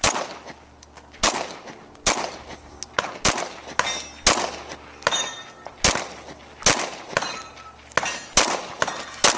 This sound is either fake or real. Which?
real